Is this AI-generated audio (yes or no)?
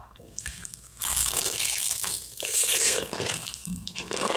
yes